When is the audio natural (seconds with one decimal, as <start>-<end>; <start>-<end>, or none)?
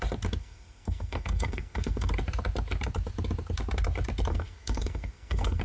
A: 0.0-0.4; 2.1-4.3